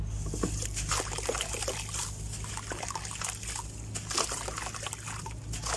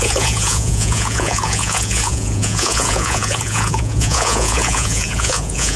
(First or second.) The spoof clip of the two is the second